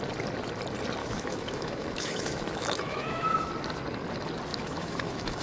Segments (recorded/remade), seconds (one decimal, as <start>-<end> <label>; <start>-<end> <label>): 0.0-1.0 recorded; 1.0-3.5 remade; 3.5-4.5 recorded; 4.5-5.4 remade